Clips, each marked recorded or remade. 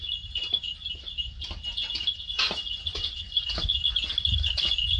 recorded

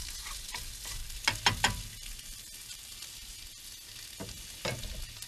recorded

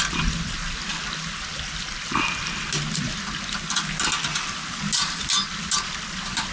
recorded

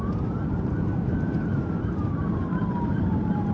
remade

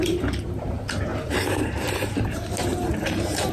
remade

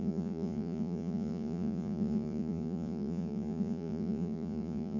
remade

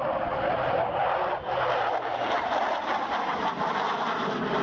recorded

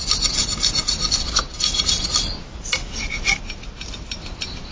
recorded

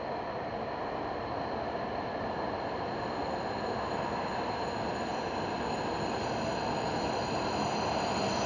recorded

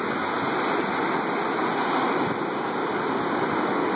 recorded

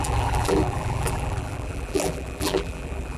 remade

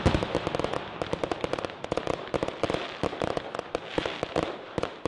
recorded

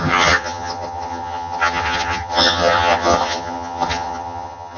remade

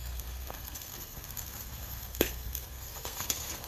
remade